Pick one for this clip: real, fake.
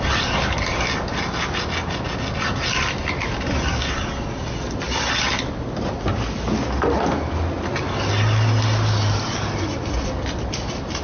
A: real